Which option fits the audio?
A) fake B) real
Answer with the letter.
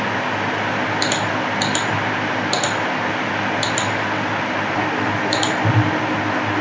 B